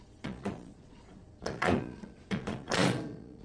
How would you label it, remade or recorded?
remade